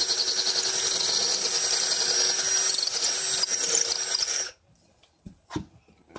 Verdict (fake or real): real